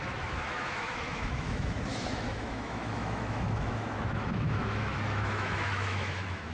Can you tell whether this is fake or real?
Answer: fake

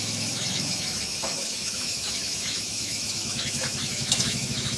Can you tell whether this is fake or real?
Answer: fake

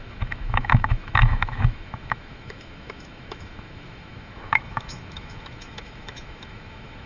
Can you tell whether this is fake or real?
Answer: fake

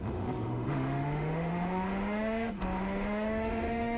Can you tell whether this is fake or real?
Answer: fake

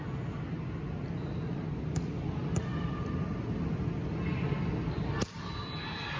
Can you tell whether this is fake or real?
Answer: real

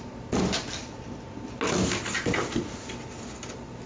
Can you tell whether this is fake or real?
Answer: real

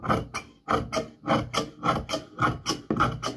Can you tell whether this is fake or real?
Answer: real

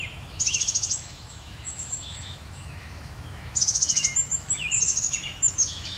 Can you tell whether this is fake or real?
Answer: fake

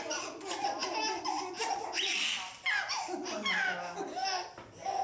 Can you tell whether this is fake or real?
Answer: real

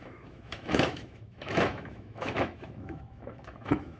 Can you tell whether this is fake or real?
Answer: fake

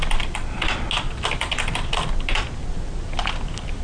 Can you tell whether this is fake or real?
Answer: real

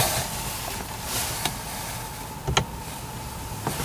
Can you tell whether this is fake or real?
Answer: real